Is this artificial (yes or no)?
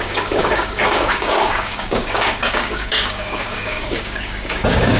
yes